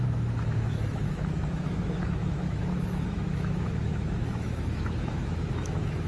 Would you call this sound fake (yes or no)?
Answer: yes